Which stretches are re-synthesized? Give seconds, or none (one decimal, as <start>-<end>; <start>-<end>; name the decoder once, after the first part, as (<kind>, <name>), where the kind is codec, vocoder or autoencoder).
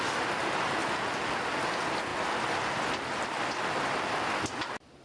none